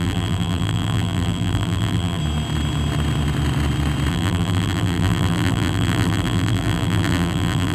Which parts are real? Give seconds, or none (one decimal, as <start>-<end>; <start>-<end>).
2.2-4.1